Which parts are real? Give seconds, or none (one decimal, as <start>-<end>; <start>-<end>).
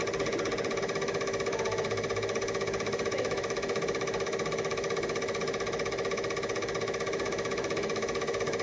0.0-0.8